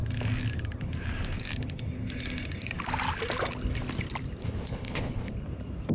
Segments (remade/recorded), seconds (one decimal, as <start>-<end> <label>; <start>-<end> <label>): 0.0-4.4 recorded; 4.4-5.3 remade; 5.3-5.9 recorded